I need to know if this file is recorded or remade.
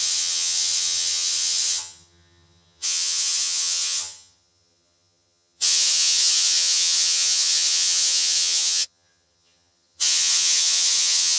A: remade